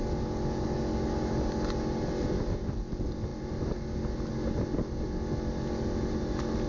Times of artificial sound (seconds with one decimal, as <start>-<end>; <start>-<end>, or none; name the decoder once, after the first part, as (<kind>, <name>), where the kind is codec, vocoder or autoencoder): none